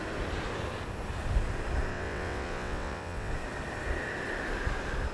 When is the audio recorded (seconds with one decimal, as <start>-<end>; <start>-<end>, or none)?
0.0-1.9; 3.3-5.1